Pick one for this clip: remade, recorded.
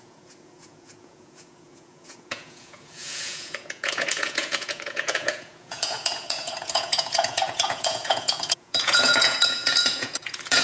remade